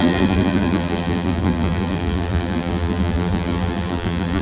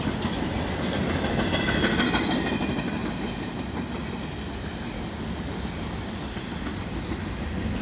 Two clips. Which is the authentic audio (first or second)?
second